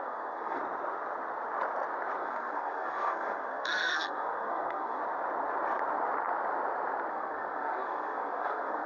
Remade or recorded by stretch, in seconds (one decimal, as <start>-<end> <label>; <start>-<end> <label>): 0.0-0.6 remade; 0.6-2.2 recorded; 2.2-5.0 remade; 5.0-7.1 recorded; 7.1-8.9 remade